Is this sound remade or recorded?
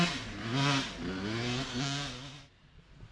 recorded